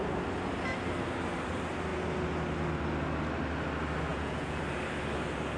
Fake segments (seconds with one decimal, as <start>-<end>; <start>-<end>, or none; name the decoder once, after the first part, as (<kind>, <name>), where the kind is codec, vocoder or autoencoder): 4.1-4.6 (vocoder, Vocos)